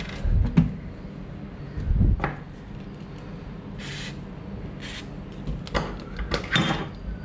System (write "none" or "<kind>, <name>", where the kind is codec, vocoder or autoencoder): none